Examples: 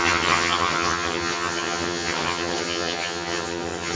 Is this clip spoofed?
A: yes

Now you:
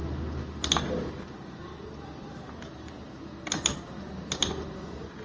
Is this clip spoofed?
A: no